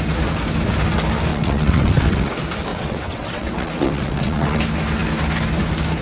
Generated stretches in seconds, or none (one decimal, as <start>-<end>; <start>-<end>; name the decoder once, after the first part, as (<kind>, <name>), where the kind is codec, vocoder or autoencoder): 1.3-2.3 (vocoder, WaveNeXt); 2.7-4.6